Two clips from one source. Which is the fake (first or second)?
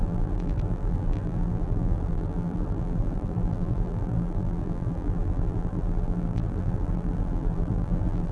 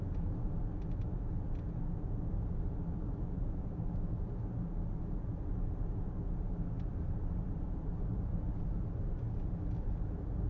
first